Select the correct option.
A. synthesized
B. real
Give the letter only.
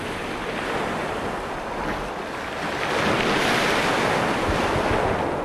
B